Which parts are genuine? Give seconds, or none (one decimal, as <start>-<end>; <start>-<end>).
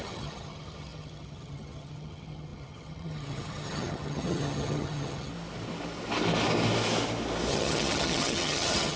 5.3-7.5